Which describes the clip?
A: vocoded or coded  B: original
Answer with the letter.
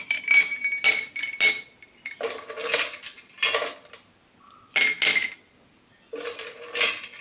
B